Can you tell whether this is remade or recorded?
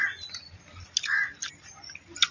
recorded